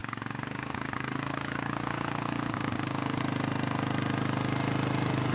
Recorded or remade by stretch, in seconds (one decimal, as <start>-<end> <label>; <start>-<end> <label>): 0.0-3.2 remade; 3.2-5.3 recorded